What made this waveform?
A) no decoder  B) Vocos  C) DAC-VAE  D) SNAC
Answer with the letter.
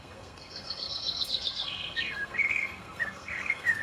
D